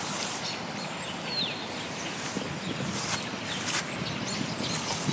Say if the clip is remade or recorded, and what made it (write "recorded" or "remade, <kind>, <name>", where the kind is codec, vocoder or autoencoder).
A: recorded